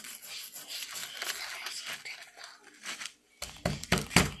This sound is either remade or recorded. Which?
recorded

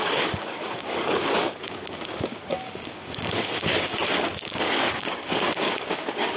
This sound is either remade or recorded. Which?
remade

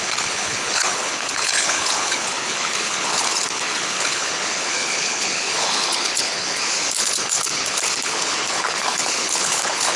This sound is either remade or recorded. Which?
remade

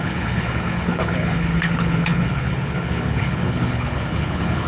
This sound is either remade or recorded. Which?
remade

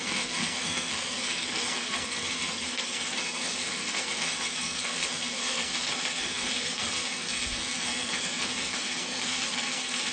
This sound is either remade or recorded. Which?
remade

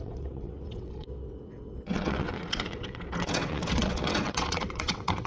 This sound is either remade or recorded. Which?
remade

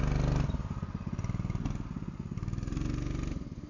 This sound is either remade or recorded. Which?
recorded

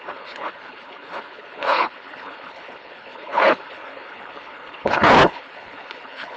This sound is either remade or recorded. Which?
remade